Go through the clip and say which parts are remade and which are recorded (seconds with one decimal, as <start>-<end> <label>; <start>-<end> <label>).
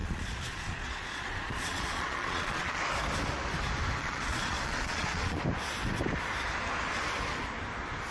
0.0-2.8 remade; 2.8-4.0 recorded; 4.0-5.4 remade; 5.4-8.1 recorded